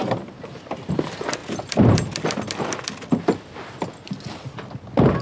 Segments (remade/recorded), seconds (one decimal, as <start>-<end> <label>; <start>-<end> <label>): 0.0-5.2 recorded